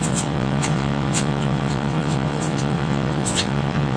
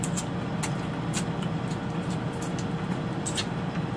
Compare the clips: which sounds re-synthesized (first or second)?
first